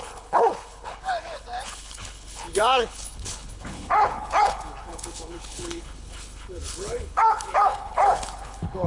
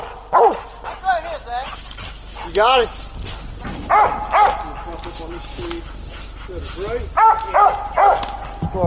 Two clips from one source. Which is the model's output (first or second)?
first